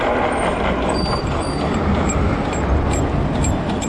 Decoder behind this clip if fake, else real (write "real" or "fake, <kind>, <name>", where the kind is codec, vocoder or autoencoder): fake, vocoder, BigVGAN v2